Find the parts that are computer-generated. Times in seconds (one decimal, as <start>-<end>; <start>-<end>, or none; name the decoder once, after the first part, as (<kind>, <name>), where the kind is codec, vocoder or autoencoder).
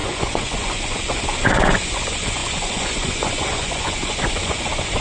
0.0-5.0 (vocoder, Vocos)